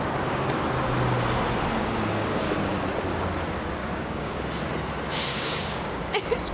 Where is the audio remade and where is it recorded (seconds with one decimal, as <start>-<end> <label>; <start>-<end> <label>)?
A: 0.0-1.8 recorded; 1.8-2.4 remade; 2.4-3.8 recorded; 3.8-4.4 remade; 4.4-5.3 recorded; 5.3-6.0 remade; 6.0-6.5 recorded